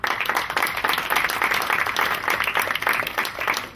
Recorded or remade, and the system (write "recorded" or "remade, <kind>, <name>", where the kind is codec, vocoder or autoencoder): recorded